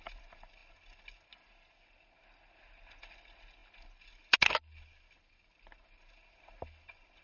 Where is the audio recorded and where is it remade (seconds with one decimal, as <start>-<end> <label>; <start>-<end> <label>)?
0.0-7.2 recorded